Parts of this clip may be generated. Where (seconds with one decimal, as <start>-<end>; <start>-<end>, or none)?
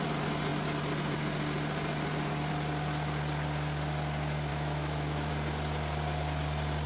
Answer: 4.5-5.3